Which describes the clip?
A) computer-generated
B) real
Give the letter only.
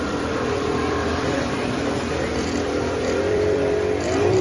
A